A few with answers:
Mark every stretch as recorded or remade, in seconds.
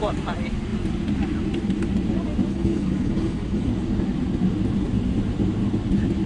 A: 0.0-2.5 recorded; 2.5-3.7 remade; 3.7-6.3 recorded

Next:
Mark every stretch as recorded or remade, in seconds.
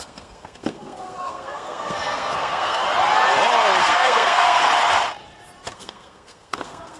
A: 0.0-2.8 remade; 2.8-3.8 recorded; 3.8-4.6 remade; 4.6-5.7 recorded; 5.7-7.0 remade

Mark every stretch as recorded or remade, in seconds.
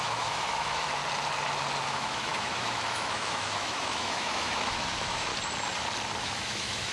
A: 0.0-1.0 remade; 1.0-1.9 recorded; 1.9-5.3 remade; 5.3-6.2 recorded; 6.2-6.9 remade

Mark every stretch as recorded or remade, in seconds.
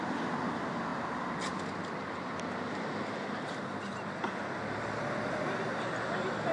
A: 0.0-6.5 recorded